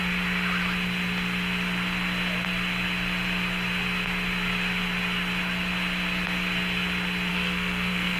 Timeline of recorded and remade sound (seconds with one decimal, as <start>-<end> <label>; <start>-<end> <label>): 0.0-7.3 recorded; 7.3-8.2 remade